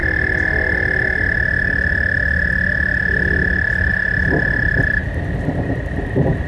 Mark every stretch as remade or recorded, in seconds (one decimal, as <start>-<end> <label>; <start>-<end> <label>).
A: 0.0-6.5 recorded